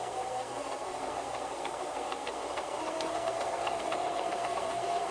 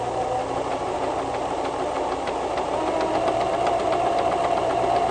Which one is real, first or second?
second